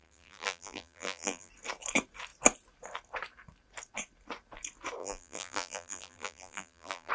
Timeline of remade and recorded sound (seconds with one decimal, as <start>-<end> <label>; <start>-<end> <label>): 0.0-1.5 remade; 1.5-5.0 recorded; 5.0-7.1 remade